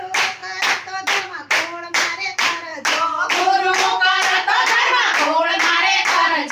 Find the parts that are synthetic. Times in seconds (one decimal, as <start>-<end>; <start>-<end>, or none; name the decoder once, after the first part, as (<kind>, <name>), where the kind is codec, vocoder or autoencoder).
0.0-0.4 (vocoder, BigVGAN v2); 1.2-2.7; 3.3-6.5